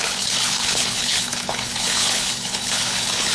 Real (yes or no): no